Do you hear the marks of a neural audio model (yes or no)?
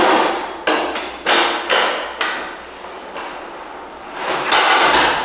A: no